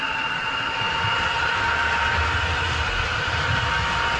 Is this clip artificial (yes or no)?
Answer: no